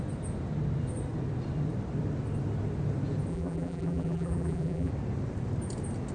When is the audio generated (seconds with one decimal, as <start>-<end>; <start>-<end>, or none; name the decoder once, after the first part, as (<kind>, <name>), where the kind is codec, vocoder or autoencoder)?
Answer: 3.3-4.9 (vocoder, BigVGAN v2)